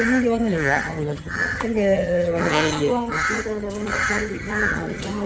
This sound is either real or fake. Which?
fake